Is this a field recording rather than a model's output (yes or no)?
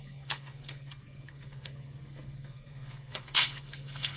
no